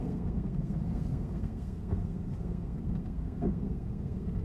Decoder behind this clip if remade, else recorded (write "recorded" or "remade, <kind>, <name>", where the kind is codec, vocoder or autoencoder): remade, codec, SNAC